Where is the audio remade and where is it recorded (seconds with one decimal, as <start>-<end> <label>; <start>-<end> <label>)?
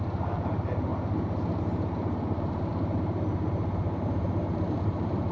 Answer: 0.0-0.9 remade; 0.9-1.6 recorded; 1.6-5.3 remade